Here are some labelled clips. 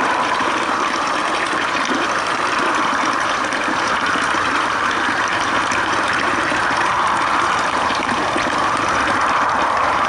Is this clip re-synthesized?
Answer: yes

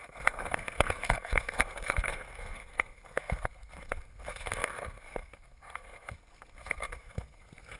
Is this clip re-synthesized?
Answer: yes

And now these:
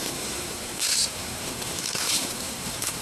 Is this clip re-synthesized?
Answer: yes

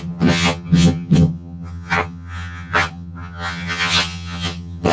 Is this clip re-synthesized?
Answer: yes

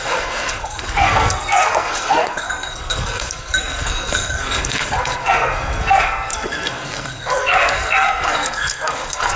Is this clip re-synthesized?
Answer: yes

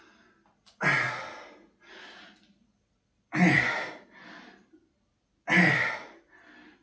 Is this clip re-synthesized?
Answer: no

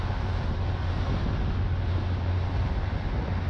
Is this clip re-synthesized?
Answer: no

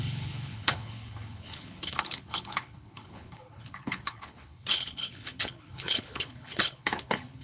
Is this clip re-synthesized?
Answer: yes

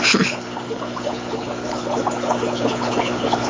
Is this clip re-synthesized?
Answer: yes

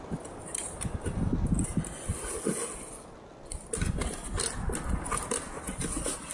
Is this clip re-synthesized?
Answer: no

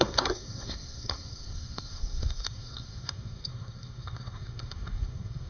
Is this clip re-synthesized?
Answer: yes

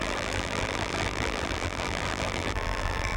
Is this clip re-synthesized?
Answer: yes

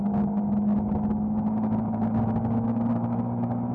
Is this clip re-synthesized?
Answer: no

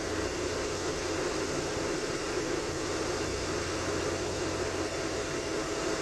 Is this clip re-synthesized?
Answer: no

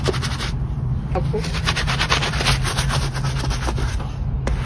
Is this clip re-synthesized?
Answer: no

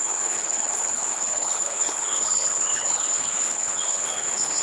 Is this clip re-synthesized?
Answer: yes